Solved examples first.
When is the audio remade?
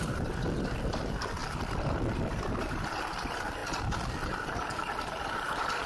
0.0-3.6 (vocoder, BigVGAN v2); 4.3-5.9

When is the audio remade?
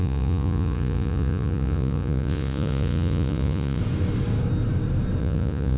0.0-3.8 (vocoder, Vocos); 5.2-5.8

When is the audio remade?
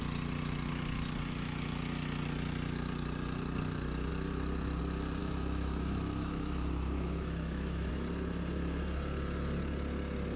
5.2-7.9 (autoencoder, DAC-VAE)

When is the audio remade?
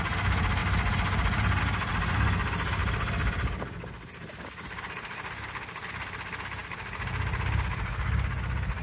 none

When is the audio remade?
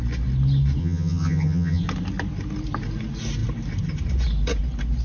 0.8-1.8 (vocoder, HiFi-GAN)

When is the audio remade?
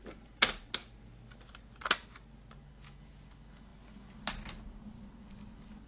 none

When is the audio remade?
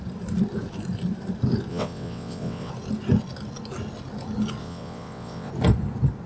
1.7-2.7 (vocoder, WaveNeXt); 4.6-5.5